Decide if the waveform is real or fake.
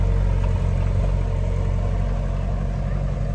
real